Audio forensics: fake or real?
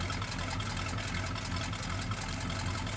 real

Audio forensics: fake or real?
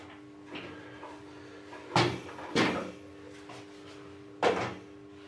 real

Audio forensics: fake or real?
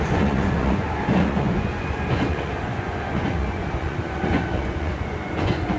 fake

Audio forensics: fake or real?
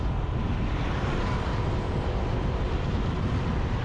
real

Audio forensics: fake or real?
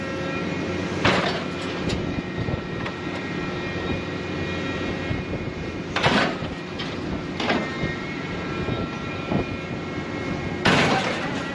real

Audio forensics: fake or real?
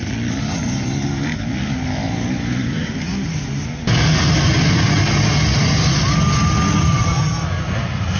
real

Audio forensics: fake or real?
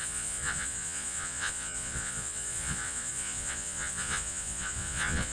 fake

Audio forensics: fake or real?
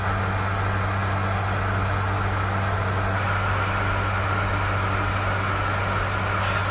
real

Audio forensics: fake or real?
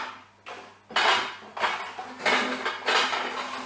real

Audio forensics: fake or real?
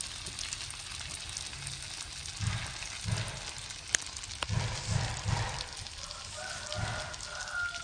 real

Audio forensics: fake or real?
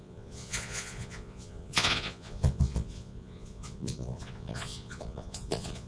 fake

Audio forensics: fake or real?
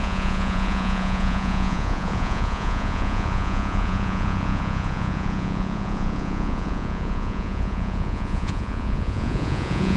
fake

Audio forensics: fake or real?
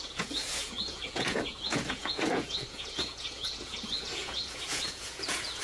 fake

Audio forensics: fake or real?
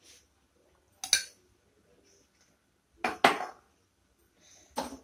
real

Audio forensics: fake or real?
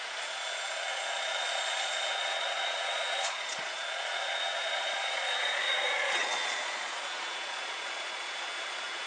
fake